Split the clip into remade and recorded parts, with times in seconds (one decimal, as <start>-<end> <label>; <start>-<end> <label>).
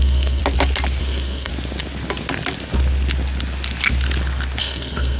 0.0-0.4 remade; 0.4-1.0 recorded; 1.0-1.5 remade; 1.5-4.6 recorded; 4.6-5.2 remade